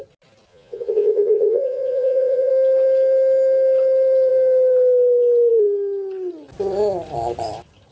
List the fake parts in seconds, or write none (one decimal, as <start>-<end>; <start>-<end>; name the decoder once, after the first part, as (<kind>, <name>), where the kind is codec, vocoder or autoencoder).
0.5-2.5 (vocoder, Vocos)